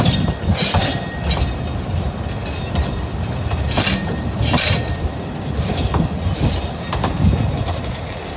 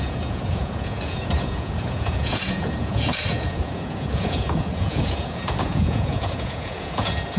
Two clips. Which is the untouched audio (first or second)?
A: first